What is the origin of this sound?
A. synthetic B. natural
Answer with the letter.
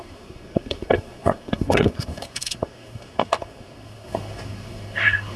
A